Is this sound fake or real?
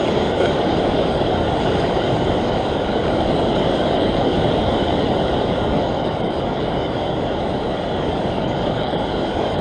fake